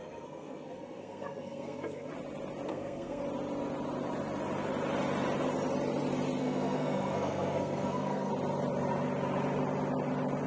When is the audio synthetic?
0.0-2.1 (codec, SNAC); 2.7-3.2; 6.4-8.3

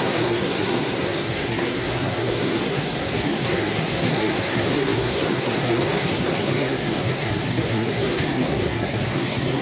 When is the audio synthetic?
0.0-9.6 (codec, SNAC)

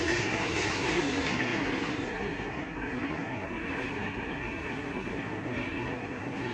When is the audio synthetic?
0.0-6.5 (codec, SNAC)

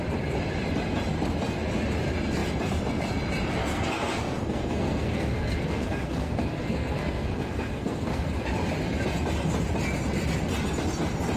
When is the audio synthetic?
3.6-8.3 (codec, SNAC)

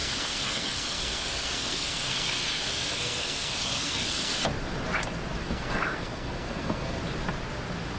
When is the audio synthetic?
0.0-4.4 (codec, SNAC); 5.4-7.0